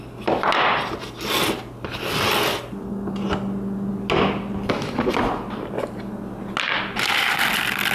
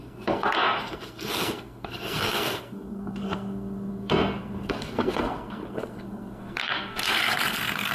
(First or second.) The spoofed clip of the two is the second